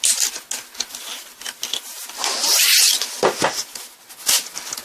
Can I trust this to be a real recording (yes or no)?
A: yes